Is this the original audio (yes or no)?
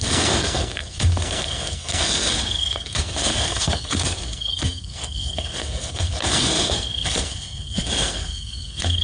no